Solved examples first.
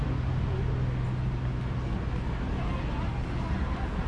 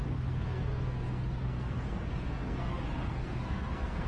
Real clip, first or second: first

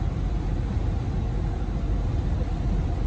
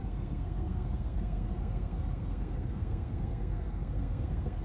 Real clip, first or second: first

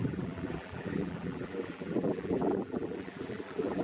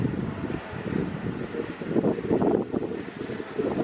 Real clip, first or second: second